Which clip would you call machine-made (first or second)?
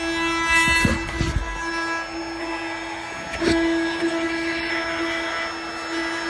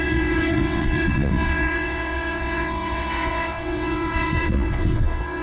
second